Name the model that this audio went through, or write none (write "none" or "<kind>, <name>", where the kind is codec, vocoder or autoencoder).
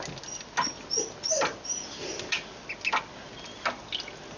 none